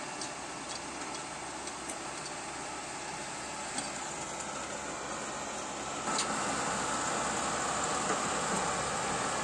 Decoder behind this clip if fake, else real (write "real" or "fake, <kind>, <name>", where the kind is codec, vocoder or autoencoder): real